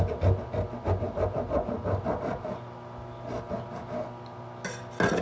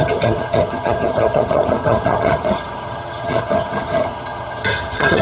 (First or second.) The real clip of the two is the first